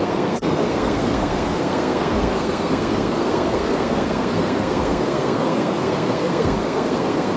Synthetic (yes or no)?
yes